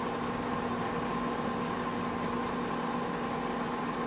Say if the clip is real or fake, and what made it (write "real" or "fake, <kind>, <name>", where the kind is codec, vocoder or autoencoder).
real